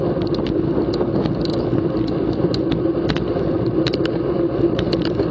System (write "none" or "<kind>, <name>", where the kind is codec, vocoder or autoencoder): none